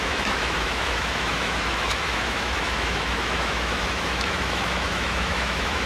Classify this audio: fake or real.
fake